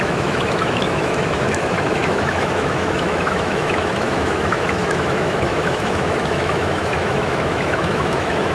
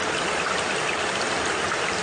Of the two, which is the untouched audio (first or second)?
second